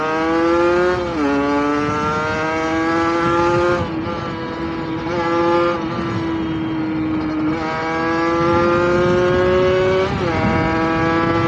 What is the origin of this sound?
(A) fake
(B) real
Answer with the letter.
B